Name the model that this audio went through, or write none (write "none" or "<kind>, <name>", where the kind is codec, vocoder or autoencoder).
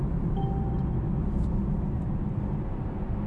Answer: none